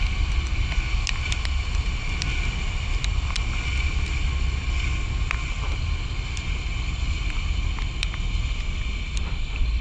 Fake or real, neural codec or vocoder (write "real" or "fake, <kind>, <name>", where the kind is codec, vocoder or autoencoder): real